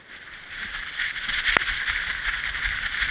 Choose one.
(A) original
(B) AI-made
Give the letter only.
A